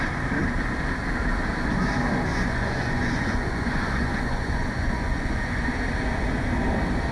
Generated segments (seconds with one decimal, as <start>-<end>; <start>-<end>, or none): 2.3-5.7